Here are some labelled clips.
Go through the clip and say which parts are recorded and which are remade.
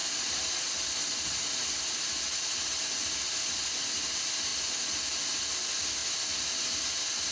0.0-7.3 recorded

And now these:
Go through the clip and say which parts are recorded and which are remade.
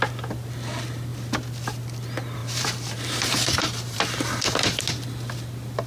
0.0-2.4 recorded; 2.4-4.8 remade; 4.8-5.9 recorded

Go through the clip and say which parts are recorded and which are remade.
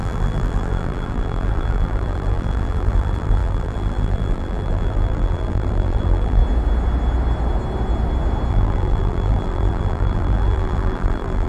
0.0-6.4 remade; 6.4-8.5 recorded; 8.5-11.5 remade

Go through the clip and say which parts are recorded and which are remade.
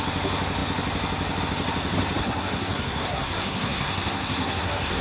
0.0-2.2 recorded; 2.2-5.0 remade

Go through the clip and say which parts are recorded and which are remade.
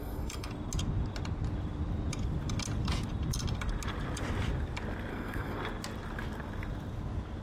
0.0-0.5 remade; 0.5-5.1 recorded; 5.1-5.6 remade; 5.6-7.4 recorded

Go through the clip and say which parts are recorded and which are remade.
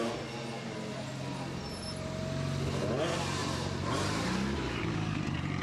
0.0-3.4 recorded; 3.4-5.6 remade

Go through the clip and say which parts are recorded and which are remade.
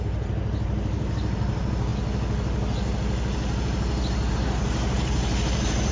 0.0-1.9 remade; 1.9-4.3 recorded; 4.3-5.9 remade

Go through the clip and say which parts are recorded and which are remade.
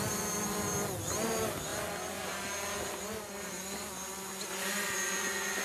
0.0-5.6 recorded